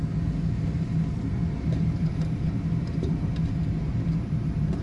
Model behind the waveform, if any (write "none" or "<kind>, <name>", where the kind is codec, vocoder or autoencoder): vocoder, BigVGAN v2